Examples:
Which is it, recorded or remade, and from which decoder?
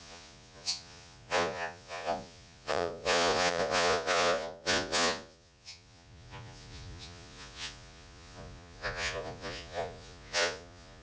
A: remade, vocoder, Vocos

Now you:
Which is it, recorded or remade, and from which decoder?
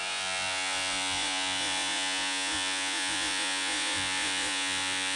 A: remade, vocoder, Vocos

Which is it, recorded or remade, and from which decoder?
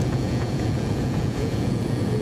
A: remade, vocoder, Vocos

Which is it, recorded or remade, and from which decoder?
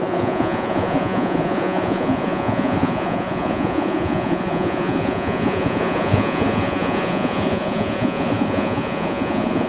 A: remade, vocoder, Vocos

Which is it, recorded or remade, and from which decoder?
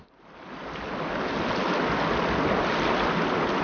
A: recorded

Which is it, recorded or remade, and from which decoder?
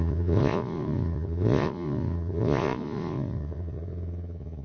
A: remade, vocoder, Vocos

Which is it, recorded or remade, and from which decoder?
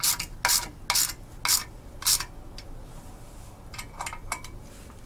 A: recorded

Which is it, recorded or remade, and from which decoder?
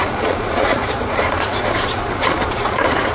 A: remade, vocoder, Vocos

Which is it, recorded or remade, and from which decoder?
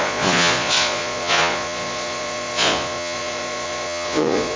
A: remade, vocoder, Vocos